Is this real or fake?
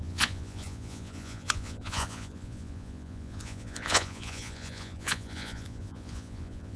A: fake